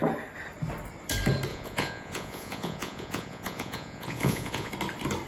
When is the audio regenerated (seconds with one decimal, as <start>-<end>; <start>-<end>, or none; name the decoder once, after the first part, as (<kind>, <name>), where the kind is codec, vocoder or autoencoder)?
1.5-4.7 (vocoder, Vocos)